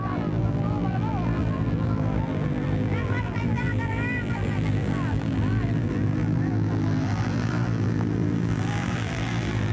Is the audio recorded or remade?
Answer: remade